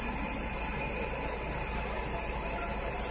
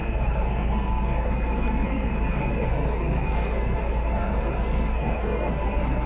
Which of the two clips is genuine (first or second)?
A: first